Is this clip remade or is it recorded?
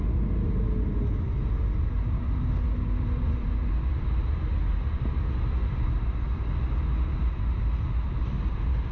recorded